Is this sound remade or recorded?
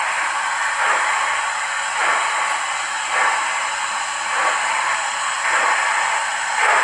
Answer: recorded